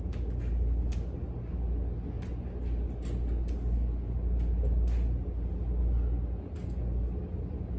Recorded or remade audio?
recorded